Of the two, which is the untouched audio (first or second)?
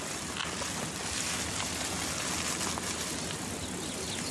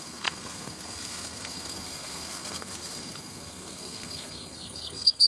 first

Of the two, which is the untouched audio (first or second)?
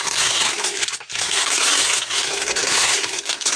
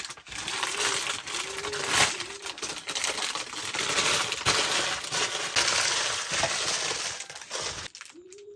second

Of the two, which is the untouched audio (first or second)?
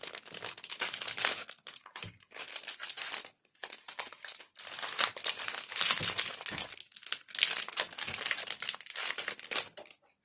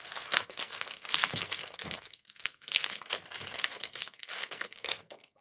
first